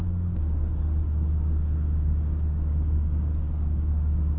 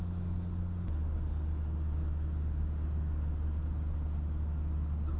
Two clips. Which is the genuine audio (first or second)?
second